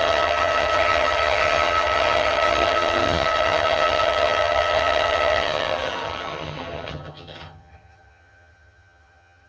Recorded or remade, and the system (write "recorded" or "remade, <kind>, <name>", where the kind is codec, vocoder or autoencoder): remade, vocoder, HiFi-GAN